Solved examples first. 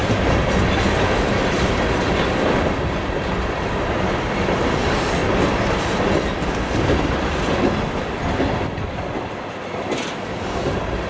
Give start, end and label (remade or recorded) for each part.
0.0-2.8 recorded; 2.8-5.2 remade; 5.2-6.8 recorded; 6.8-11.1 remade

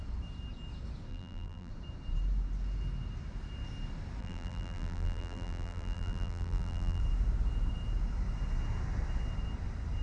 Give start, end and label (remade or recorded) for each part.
0.0-1.1 recorded; 1.1-1.7 remade; 1.7-4.2 recorded; 4.2-7.0 remade; 7.0-10.0 recorded

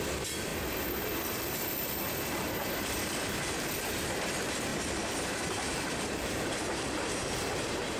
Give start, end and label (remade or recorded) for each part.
0.0-8.0 remade

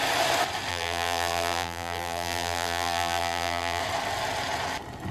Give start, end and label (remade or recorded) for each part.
0.0-0.7 recorded; 0.7-3.8 remade; 3.8-5.1 recorded

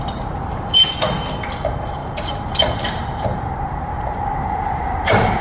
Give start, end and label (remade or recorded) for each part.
0.0-0.9 remade; 0.9-2.0 recorded; 2.0-5.4 remade